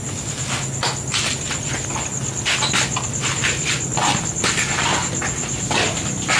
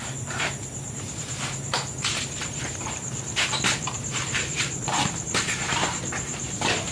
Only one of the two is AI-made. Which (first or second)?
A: second